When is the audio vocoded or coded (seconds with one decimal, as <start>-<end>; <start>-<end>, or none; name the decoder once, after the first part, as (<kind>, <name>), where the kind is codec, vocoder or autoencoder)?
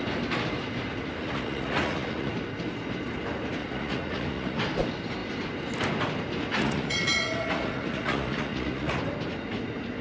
1.2-2.3 (vocoder, Vocos); 3.6-4.6; 6.6-9.0